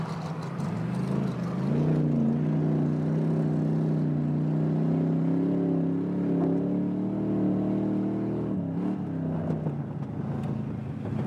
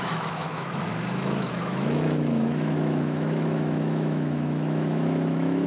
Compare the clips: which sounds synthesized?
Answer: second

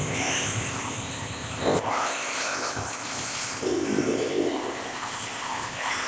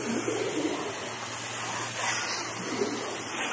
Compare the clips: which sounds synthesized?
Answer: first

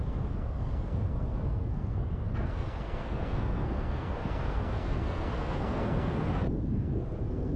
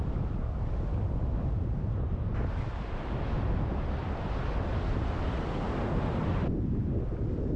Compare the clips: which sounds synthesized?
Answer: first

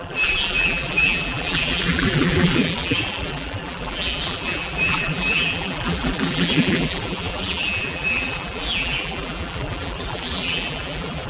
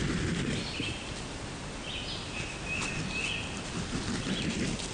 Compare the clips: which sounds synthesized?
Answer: first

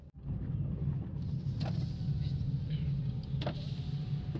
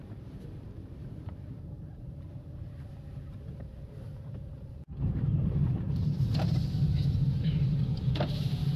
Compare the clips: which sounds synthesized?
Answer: second